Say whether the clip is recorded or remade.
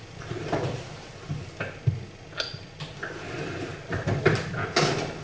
recorded